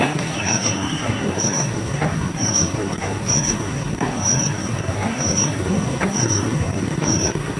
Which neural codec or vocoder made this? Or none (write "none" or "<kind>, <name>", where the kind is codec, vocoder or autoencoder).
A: codec, SNAC